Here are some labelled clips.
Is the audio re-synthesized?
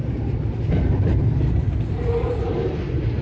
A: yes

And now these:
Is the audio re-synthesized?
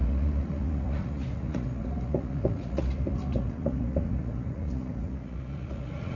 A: yes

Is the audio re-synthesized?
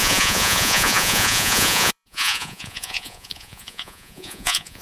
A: yes